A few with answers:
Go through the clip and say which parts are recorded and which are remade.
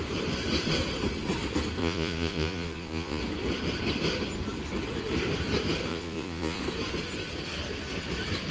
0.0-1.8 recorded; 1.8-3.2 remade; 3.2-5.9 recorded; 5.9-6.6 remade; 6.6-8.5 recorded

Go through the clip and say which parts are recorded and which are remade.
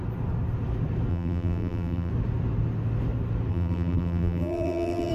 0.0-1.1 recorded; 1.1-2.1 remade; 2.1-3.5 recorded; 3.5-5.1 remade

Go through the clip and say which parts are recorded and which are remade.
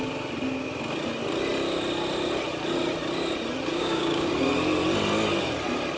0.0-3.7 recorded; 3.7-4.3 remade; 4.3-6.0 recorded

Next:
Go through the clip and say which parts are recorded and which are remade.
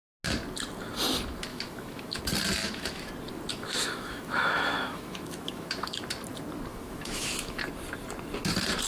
0.0-1.5 recorded; 1.5-2.2 remade; 2.2-2.6 recorded; 2.6-3.1 remade; 3.1-3.5 recorded; 3.5-6.0 remade; 6.0-6.7 recorded; 6.7-7.6 remade; 7.6-8.9 recorded